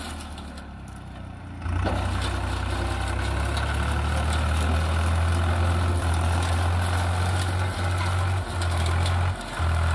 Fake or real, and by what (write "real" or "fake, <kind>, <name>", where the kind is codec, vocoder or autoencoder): real